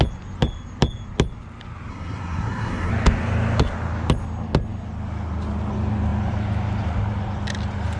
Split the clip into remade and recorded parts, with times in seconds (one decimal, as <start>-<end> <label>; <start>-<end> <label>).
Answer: 0.0-1.9 recorded; 1.9-2.9 remade; 2.9-8.0 recorded